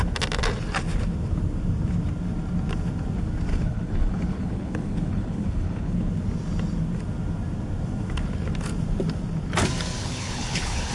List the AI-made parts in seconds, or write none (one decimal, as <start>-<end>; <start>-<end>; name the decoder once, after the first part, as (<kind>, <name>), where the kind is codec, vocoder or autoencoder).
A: 3.5-6.1 (codec, HILCodec); 10.0-10.9